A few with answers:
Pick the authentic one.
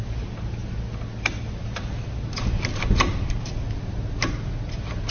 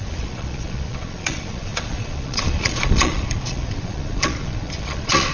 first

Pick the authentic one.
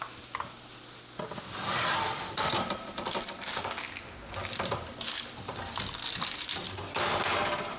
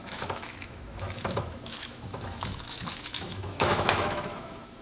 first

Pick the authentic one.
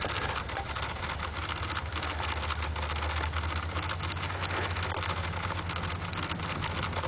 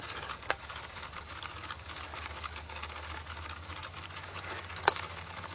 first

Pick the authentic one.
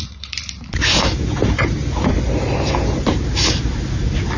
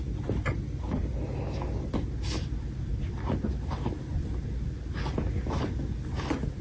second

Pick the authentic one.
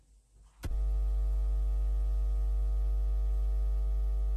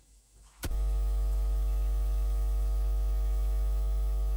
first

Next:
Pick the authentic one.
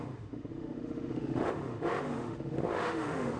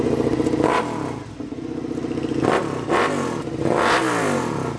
second